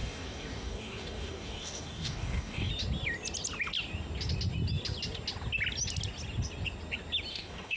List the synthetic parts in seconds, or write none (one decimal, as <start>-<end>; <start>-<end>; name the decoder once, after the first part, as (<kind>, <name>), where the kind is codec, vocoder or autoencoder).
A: 0.0-2.7 (codec, DAC); 7.3-7.8